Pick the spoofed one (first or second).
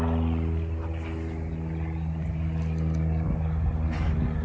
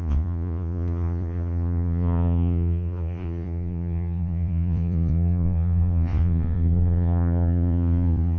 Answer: second